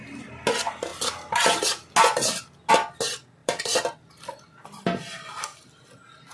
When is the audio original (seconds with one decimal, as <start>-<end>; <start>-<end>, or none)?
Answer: 0.0-3.4; 5.2-6.3